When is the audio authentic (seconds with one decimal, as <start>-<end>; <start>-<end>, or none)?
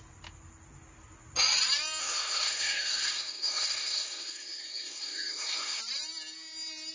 0.0-2.0; 5.8-6.9